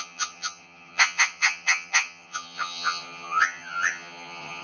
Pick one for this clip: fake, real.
fake